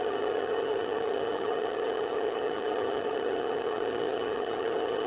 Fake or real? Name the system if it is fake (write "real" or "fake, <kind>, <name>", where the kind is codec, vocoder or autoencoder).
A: fake, vocoder, HiFi-GAN